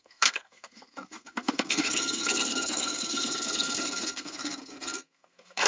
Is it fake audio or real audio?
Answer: fake